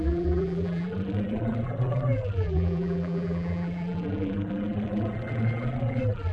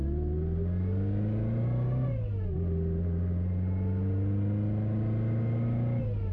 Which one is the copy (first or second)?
first